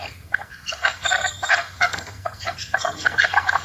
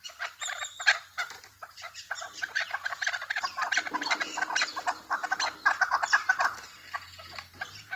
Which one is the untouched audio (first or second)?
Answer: second